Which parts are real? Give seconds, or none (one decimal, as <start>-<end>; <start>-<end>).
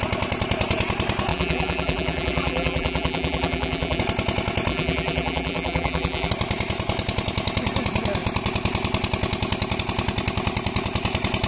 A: 0.0-1.3; 4.0-4.7; 6.3-11.5